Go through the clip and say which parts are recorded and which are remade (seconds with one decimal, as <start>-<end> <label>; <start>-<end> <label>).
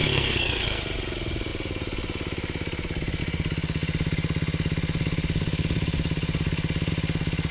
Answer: 0.0-0.8 remade; 0.8-7.5 recorded